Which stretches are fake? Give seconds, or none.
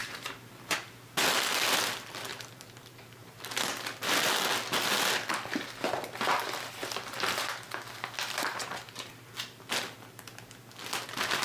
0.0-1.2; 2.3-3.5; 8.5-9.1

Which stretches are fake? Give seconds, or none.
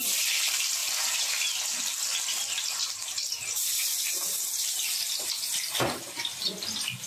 none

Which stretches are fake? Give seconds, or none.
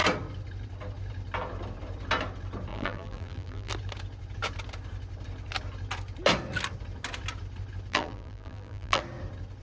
2.7-3.7; 7.9-9.0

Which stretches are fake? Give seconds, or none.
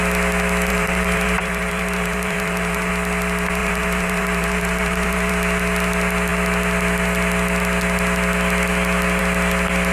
0.7-2.9; 3.6-5.3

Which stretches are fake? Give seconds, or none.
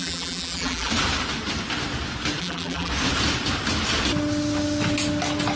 0.0-0.9; 2.4-2.9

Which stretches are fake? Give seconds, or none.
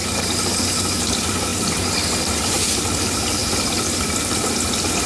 3.4-4.3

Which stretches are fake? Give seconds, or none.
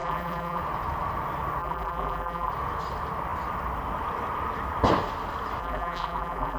0.0-0.6; 1.6-2.5; 5.6-6.6